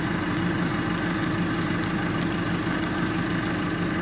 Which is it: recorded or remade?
recorded